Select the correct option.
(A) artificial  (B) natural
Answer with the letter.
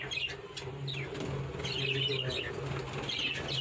B